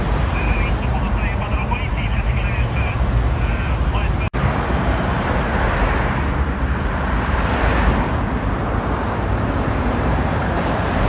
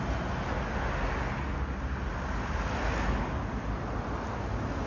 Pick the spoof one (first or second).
first